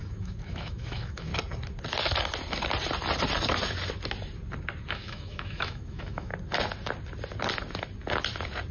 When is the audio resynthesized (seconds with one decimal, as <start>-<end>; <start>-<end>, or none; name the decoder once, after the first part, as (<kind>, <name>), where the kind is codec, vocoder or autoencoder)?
0.0-1.3 (autoencoder, DAC-VAE); 4.9-6.3